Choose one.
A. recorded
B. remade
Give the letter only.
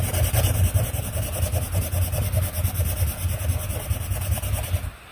A